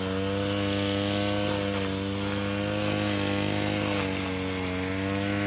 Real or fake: real